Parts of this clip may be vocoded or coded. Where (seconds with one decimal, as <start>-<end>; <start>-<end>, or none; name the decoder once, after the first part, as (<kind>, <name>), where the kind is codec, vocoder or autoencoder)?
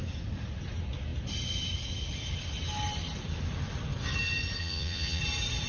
4.6-5.2 (vocoder, Vocos)